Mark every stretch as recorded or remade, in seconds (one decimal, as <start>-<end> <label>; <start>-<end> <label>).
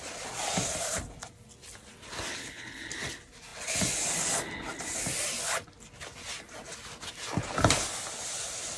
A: 0.0-2.3 recorded; 2.3-2.9 remade; 2.9-8.8 recorded